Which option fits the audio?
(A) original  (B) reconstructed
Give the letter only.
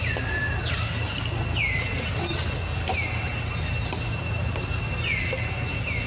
A